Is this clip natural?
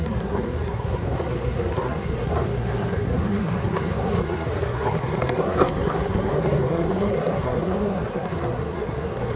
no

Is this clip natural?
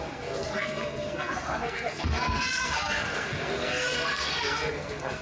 no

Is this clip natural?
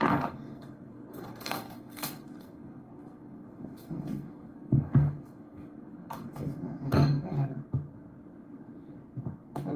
no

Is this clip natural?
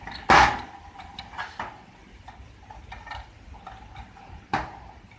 yes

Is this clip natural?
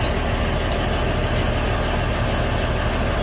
yes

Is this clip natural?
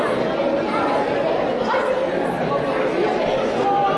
yes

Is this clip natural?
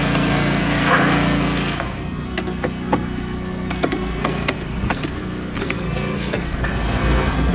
no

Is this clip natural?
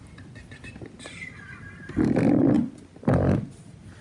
yes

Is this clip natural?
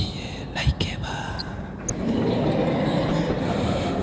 yes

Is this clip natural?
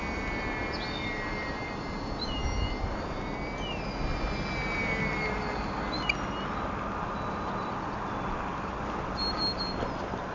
yes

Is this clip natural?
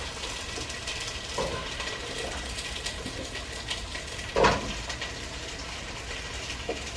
yes